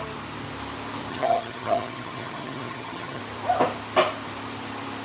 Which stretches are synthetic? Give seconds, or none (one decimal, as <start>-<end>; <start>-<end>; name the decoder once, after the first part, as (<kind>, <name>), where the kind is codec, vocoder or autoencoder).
1.1-3.2 (vocoder, HiFi-GAN)